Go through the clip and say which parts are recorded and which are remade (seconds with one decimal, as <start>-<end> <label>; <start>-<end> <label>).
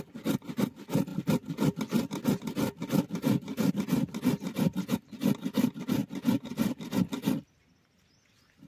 0.0-8.7 recorded